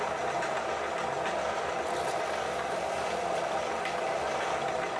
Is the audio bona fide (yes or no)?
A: yes